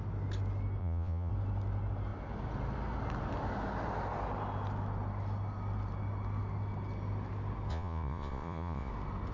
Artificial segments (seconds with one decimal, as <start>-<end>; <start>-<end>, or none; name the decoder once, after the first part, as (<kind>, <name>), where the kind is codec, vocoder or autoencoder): 0.8-1.3 (vocoder, Vocos); 7.7-8.9